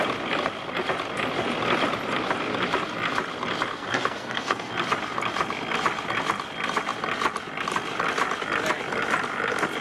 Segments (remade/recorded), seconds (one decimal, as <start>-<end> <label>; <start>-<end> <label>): 0.0-3.7 recorded; 3.7-4.7 remade; 4.7-9.8 recorded